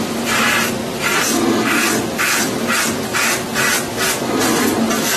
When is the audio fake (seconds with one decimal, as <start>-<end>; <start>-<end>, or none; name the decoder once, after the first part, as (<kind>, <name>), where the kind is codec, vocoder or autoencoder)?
none